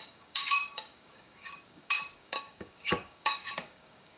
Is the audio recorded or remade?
remade